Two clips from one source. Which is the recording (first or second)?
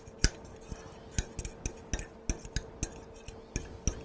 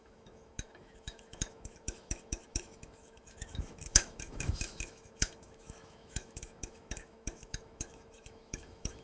first